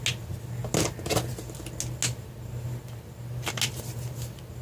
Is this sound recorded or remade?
recorded